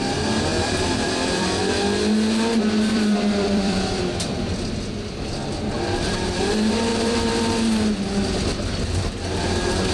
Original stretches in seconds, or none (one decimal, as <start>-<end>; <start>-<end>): 0.0-0.5; 1.6-2.9; 4.0-6.9; 7.4-9.9